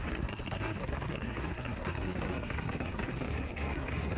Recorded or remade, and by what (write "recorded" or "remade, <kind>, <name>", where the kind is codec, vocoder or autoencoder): remade, codec, SNAC